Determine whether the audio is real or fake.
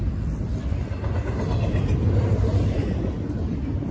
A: real